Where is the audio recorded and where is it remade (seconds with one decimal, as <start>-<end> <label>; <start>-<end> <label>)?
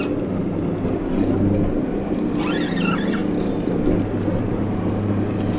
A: 0.0-5.6 recorded